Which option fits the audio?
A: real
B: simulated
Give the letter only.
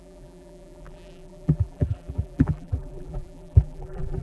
B